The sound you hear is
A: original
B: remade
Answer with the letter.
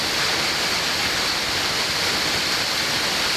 A